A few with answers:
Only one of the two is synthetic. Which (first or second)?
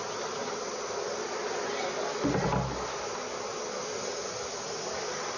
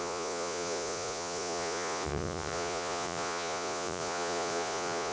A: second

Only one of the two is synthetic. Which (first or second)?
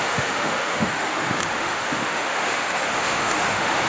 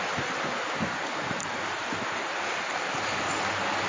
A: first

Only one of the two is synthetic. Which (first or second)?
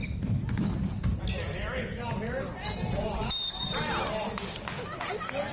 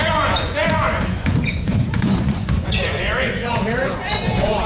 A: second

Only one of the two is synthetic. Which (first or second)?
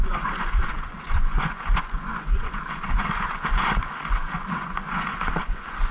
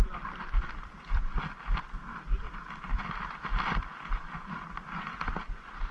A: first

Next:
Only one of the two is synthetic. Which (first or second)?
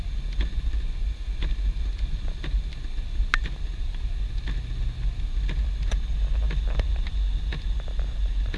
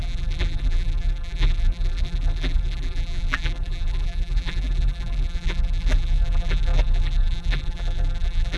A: second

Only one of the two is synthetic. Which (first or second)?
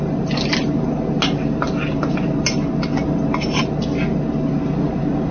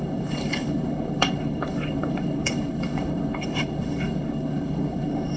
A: second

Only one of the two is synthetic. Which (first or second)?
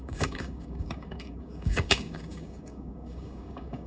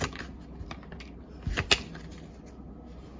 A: first